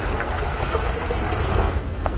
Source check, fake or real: fake